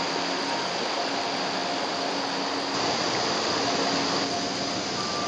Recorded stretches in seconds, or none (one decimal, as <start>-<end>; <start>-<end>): 0.0-5.3